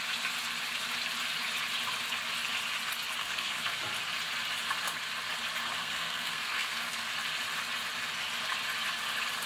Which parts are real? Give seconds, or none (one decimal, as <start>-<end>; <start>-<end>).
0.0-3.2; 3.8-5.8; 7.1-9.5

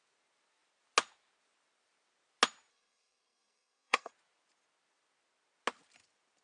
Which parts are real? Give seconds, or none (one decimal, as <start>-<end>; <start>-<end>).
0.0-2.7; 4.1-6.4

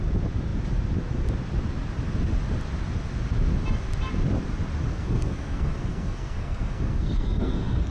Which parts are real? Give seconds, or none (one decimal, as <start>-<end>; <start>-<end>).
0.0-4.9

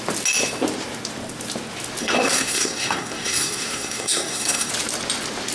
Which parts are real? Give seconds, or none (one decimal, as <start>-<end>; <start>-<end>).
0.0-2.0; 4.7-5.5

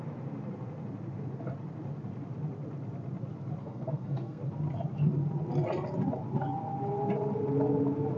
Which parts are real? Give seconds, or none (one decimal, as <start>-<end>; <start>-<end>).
0.0-3.6; 4.4-8.2

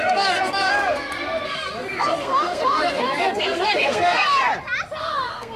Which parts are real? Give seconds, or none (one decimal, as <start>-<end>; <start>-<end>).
4.5-5.0

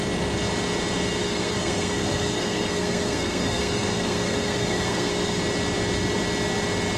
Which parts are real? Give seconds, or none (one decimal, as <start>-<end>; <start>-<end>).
0.0-1.2; 5.4-7.0

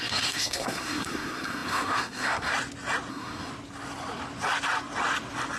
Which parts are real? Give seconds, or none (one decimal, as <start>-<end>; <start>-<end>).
2.5-3.1; 3.5-5.6